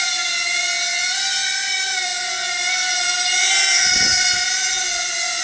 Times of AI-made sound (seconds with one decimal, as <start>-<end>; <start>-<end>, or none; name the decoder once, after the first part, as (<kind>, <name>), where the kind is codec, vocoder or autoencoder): none